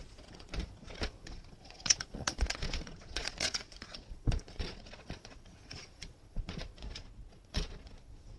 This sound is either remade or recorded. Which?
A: remade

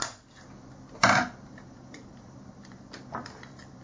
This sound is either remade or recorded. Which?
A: remade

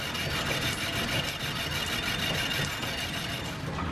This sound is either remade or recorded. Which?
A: recorded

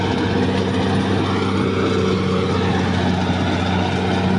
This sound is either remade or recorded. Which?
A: recorded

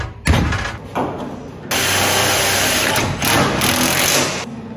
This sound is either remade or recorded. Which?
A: recorded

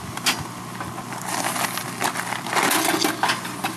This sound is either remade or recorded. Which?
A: recorded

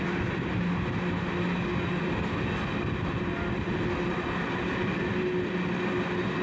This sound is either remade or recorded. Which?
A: recorded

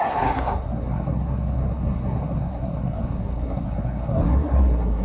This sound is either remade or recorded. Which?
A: remade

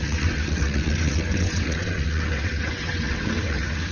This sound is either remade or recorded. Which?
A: remade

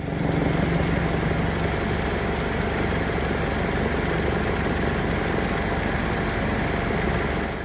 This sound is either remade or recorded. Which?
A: recorded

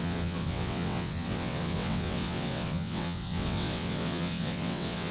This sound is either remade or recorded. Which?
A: remade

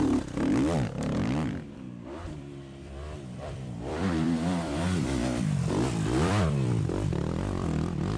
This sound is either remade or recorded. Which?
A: remade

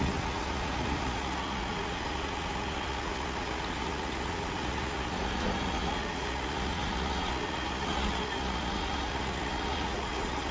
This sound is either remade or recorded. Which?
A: remade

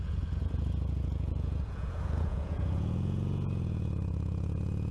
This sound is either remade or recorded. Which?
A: remade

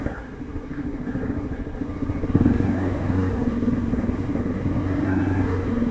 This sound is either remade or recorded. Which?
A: remade